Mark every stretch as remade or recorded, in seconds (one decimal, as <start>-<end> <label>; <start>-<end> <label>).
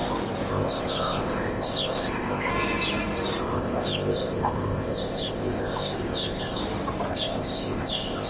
0.0-0.5 recorded; 0.5-2.5 remade; 2.5-3.4 recorded; 3.4-6.6 remade; 6.6-7.1 recorded; 7.1-8.3 remade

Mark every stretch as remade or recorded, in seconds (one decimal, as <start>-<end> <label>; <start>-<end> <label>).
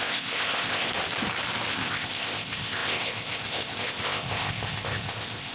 0.0-0.9 remade; 0.9-1.7 recorded; 1.7-5.5 remade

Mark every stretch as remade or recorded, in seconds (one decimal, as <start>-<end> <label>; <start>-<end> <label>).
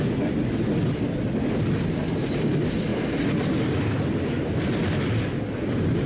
0.0-6.1 recorded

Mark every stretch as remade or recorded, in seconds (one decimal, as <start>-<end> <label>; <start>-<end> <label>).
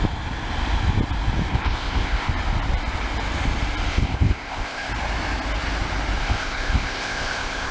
0.0-1.5 recorded; 1.5-2.3 remade; 2.3-3.9 recorded; 3.9-4.9 remade; 4.9-6.2 recorded; 6.2-7.7 remade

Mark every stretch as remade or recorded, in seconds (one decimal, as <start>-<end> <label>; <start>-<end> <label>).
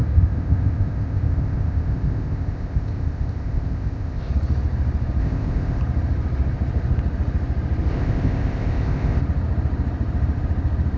0.0-4.3 remade; 4.3-5.2 recorded; 5.2-5.8 remade; 5.8-7.9 recorded; 7.9-9.2 remade; 9.2-11.0 recorded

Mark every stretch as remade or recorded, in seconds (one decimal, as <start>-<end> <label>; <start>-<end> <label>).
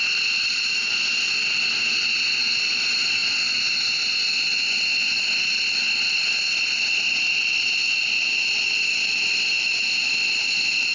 0.0-10.9 recorded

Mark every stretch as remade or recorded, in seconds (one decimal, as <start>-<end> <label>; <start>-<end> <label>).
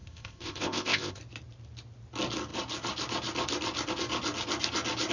0.0-1.2 remade; 1.2-5.1 recorded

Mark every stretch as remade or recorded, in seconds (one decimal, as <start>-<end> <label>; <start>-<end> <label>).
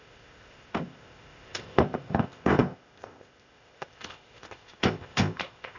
0.0-5.8 remade